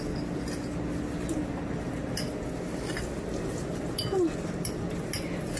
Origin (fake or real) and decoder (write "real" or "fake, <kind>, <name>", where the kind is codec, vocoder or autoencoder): real